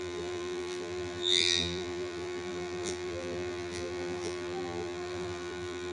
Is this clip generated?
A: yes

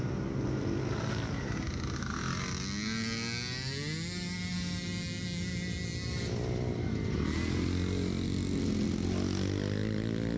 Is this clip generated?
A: no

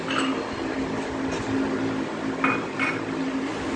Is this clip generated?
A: no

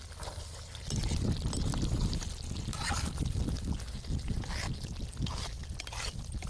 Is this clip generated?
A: no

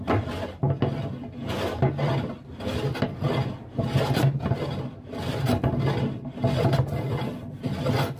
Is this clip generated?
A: no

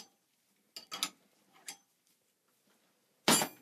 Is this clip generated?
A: no